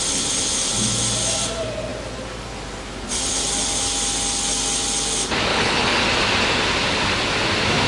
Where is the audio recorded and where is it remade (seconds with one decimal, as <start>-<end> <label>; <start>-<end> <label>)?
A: 0.0-5.5 recorded; 5.5-6.0 remade; 6.0-7.9 recorded